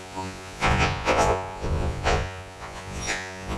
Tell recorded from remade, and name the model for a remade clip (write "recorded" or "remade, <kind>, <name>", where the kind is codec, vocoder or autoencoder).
remade, vocoder, Vocos